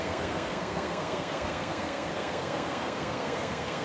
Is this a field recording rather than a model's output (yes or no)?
no